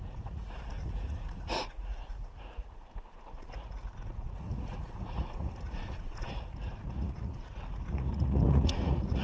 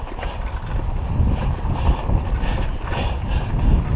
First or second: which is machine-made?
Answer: first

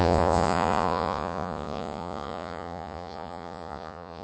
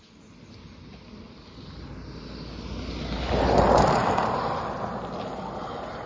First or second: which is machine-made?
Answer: first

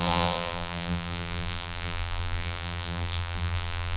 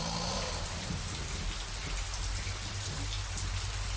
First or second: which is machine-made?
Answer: first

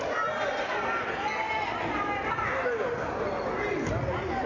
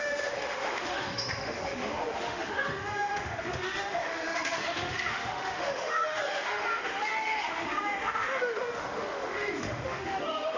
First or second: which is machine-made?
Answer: second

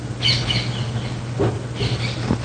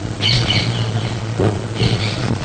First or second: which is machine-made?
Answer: second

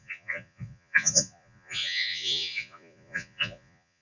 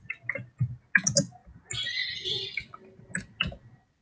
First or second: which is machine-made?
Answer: first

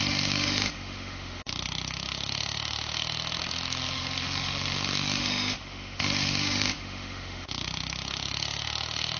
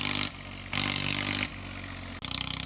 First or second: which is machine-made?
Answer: first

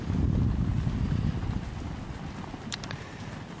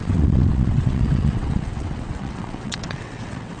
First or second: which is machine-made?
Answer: second